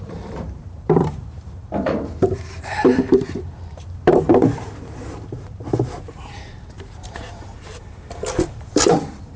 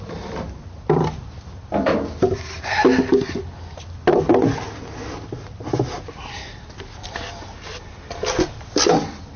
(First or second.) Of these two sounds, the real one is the second